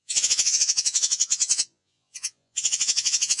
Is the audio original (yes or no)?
no